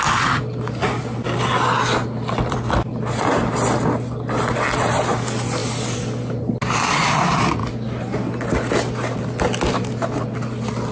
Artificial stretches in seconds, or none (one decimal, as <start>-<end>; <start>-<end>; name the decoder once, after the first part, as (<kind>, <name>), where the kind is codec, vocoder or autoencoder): none